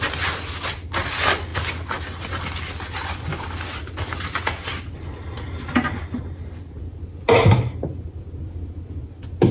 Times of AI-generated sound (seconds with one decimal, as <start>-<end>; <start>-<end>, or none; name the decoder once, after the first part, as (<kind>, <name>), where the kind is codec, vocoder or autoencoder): none